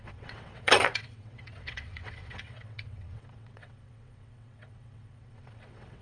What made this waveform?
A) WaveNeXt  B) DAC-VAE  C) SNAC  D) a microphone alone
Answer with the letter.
A